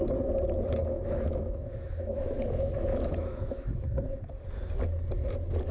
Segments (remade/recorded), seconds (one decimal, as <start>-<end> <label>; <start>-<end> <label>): 0.0-0.8 recorded; 0.8-4.2 remade; 4.2-5.7 recorded